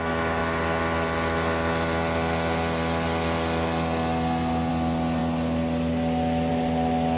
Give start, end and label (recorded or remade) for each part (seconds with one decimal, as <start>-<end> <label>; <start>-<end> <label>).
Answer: 0.0-7.2 recorded